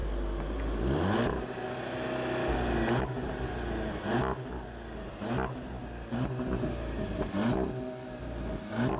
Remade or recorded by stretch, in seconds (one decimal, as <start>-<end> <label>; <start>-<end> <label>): 0.0-9.0 recorded